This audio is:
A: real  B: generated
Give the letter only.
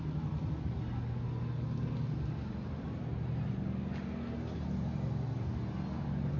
A